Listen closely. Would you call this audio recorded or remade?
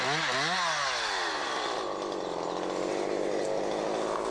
recorded